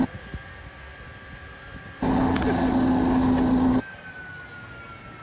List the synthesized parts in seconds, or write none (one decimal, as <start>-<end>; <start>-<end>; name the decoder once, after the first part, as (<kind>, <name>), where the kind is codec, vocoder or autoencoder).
none